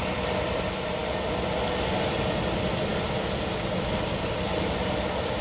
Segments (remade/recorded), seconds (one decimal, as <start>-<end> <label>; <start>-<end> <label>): 0.0-5.4 recorded